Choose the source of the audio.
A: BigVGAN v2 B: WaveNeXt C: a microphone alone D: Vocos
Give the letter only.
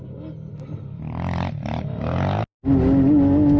C